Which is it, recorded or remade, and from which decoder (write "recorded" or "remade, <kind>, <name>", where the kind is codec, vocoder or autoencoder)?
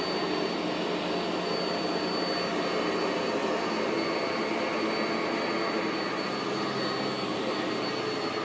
recorded